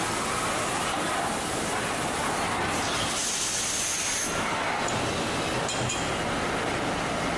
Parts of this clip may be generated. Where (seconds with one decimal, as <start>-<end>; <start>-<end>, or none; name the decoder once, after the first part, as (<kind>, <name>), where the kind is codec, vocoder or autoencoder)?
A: none

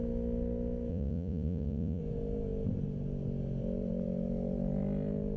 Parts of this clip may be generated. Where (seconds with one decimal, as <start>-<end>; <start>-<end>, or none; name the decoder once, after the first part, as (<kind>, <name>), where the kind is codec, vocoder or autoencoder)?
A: 0.9-2.0 (vocoder, Vocos)